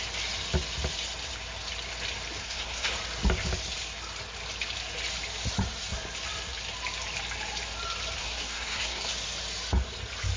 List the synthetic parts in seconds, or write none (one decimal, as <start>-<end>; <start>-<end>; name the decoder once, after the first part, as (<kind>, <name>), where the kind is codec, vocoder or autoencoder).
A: 2.4-2.9 (codec, SNAC); 8.2-9.1